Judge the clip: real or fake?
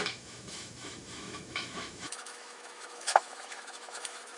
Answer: fake